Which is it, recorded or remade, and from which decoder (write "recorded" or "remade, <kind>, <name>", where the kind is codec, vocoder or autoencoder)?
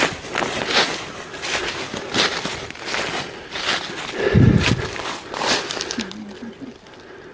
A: recorded